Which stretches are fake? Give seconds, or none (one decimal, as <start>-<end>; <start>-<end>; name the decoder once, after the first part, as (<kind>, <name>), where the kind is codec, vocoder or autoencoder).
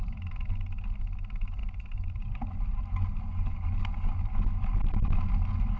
3.5-4.3 (vocoder, BigVGAN v2)